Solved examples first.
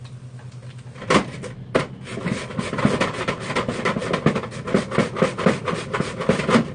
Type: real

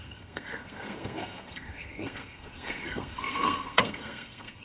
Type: fake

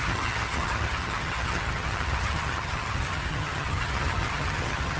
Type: fake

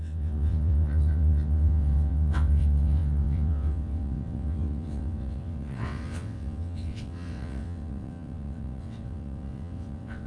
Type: fake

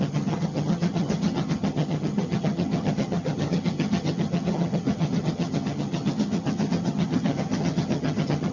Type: fake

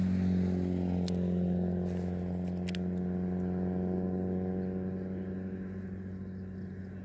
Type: real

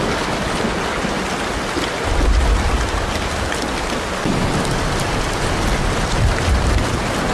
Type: real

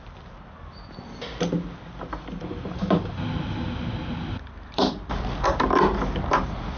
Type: real